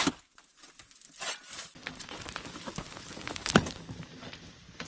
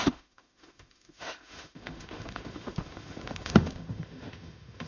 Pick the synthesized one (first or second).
second